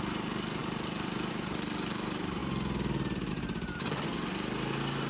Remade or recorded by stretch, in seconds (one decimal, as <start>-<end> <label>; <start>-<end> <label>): 0.0-2.4 remade; 2.4-3.3 recorded; 3.3-4.1 remade; 4.1-5.1 recorded